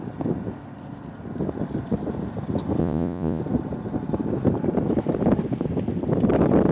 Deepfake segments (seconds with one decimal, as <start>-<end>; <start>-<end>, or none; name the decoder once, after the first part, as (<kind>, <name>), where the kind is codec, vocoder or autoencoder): 2.8-3.4 (vocoder, Vocos)